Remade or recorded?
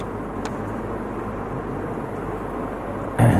recorded